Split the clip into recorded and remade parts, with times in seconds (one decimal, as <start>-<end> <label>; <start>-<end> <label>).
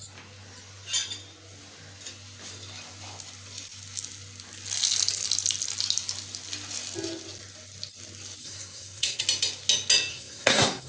0.0-8.4 recorded; 8.4-9.2 remade; 9.2-10.1 recorded; 10.1-10.9 remade